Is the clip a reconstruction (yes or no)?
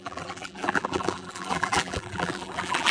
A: yes